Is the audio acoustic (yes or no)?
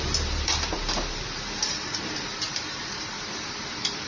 no